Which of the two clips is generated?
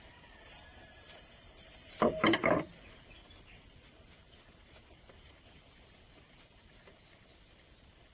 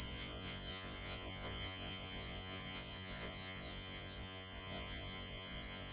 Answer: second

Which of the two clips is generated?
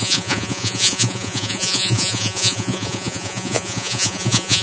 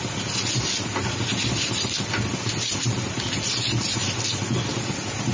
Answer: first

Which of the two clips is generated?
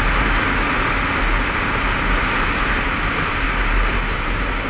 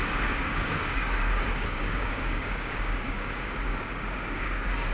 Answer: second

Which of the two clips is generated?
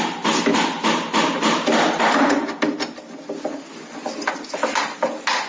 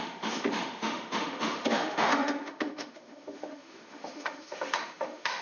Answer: second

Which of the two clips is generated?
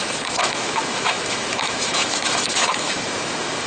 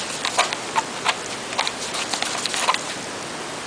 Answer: first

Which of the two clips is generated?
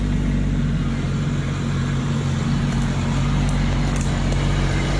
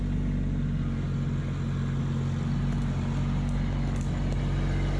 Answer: first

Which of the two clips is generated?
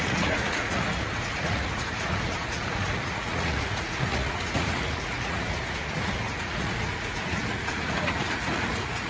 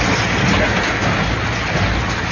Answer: first